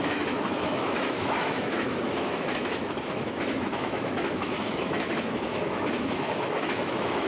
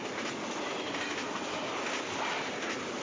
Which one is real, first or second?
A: second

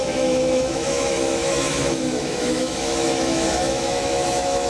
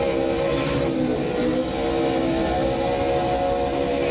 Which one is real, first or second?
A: second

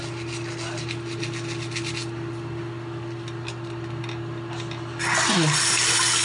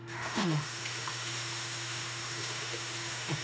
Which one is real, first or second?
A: first